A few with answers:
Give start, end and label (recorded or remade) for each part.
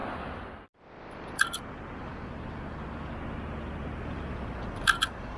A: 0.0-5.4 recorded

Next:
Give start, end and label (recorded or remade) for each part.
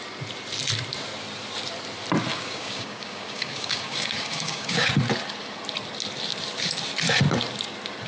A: 0.0-2.3 recorded; 2.3-4.9 remade; 4.9-8.1 recorded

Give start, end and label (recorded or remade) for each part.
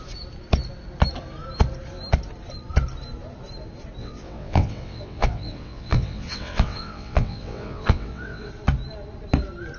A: 0.0-4.0 recorded; 4.0-8.5 remade; 8.5-9.8 recorded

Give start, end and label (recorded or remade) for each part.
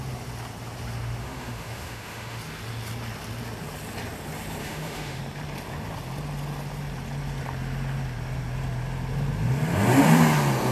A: 0.0-1.2 recorded; 1.2-2.4 remade; 2.4-4.6 recorded; 4.6-5.2 remade; 5.2-10.7 recorded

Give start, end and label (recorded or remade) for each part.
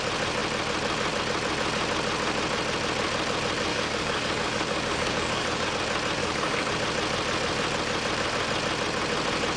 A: 0.0-3.7 recorded; 3.7-5.7 remade; 5.7-6.2 recorded; 6.2-6.7 remade; 6.7-9.6 recorded